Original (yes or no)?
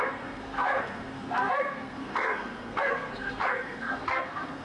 no